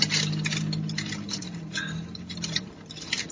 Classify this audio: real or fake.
real